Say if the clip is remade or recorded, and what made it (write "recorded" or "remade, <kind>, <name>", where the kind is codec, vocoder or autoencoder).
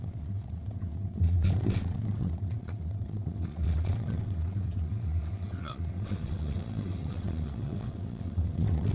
remade, vocoder, WaveNeXt